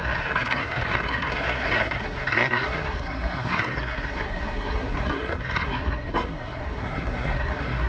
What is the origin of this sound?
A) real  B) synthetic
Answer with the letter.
B